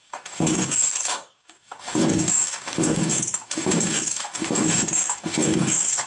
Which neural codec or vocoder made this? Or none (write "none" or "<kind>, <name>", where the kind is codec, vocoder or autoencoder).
codec, DAC